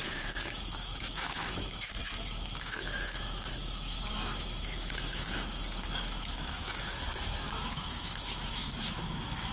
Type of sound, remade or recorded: remade